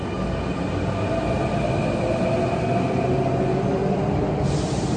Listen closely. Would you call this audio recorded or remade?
recorded